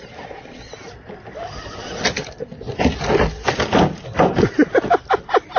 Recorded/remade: recorded